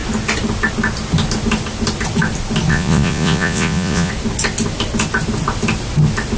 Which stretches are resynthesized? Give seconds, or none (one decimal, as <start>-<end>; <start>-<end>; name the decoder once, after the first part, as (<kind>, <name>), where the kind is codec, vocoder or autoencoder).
2.7-4.1 (vocoder, Vocos)